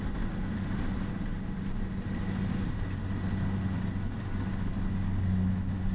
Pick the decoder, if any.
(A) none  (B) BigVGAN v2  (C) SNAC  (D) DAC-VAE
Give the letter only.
A